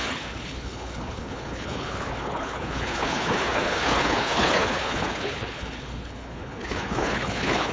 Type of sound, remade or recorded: remade